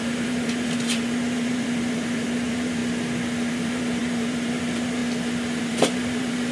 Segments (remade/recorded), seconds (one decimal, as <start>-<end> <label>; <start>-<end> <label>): 0.0-2.8 remade; 2.8-3.5 recorded; 3.5-5.0 remade; 5.0-5.6 recorded; 5.6-6.5 remade